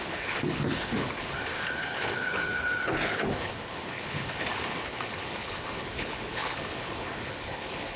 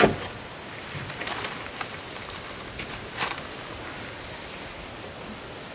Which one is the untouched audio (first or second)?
second